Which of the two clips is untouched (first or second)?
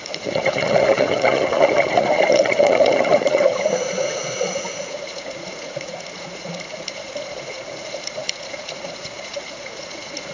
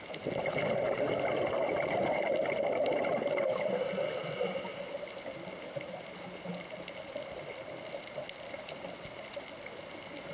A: second